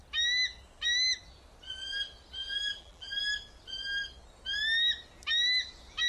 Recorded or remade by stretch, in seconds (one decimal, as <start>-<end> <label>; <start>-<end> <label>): 0.0-2.4 recorded; 2.4-3.1 remade; 3.1-6.1 recorded